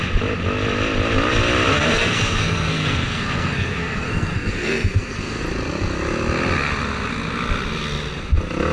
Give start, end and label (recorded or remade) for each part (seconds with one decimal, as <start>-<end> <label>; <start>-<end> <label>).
0.0-1.7 recorded; 1.7-5.4 remade; 5.4-8.7 recorded